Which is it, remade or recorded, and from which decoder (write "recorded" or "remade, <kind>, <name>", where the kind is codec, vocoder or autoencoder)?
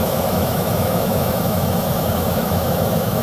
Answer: remade, autoencoder, DAC-VAE